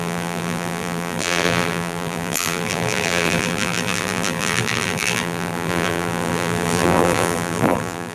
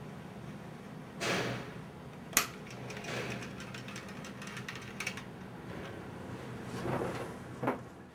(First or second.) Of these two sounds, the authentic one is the second